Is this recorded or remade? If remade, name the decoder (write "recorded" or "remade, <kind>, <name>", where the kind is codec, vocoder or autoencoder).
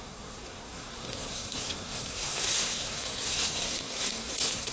remade, codec, SNAC